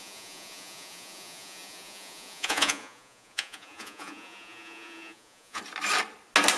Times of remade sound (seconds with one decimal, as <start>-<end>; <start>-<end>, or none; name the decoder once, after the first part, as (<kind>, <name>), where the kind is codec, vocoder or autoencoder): 0.0-5.6 (vocoder, Vocos)